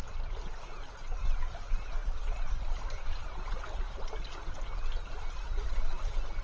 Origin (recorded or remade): recorded